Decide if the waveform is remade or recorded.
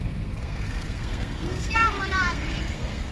remade